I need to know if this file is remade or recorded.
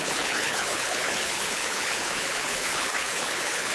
remade